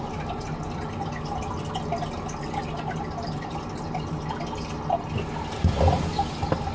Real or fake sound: real